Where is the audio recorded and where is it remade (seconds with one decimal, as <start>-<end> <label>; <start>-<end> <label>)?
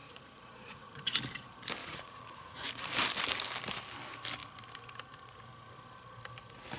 0.0-1.0 remade; 1.0-1.8 recorded; 1.8-2.7 remade; 2.7-6.8 recorded